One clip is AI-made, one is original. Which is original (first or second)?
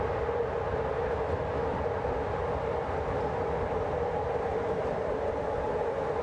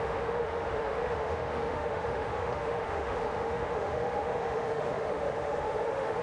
first